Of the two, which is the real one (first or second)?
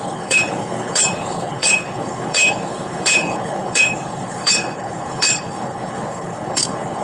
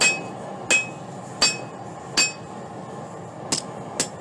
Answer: second